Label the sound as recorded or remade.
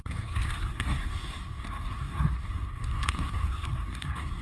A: remade